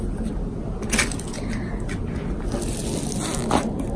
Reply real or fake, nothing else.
real